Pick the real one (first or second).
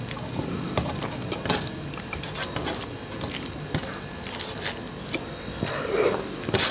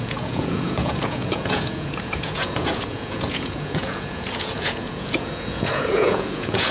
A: first